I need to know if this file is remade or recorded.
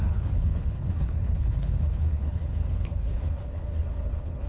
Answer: remade